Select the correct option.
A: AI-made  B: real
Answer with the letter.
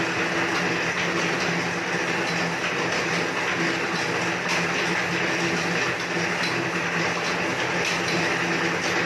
B